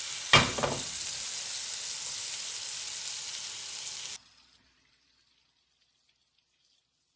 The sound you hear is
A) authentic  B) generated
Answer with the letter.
A